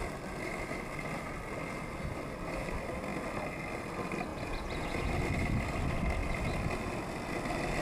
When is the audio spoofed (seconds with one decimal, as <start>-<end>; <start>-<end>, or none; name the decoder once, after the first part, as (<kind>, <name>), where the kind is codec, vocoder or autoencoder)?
4.3-5.1 (vocoder, Vocos)